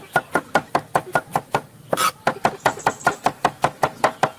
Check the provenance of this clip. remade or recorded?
recorded